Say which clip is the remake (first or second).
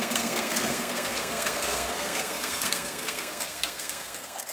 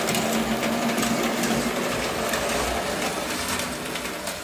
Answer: first